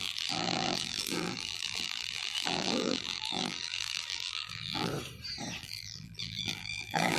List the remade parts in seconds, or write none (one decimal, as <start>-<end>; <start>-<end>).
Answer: 0.0-4.9; 5.6-7.2